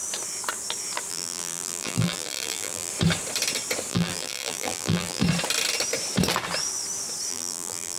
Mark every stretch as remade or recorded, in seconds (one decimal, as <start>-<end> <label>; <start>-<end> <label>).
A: 0.0-1.1 recorded; 1.1-2.9 remade; 2.9-3.9 recorded; 3.9-5.2 remade; 5.2-7.3 recorded; 7.3-8.0 remade